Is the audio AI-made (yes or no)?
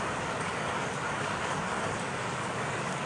yes